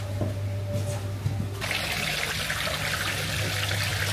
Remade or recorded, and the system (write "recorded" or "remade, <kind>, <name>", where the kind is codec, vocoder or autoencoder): recorded